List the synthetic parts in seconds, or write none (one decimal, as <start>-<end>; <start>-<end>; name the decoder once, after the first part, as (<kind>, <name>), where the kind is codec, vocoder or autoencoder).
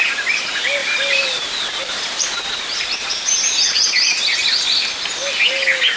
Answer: 0.8-3.6 (vocoder, BigVGAN v2)